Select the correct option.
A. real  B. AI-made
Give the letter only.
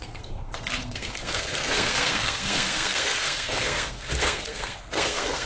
B